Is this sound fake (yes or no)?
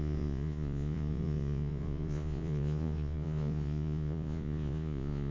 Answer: yes